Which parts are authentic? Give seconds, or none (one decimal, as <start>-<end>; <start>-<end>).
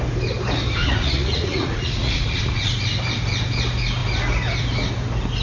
0.0-0.8; 2.7-5.4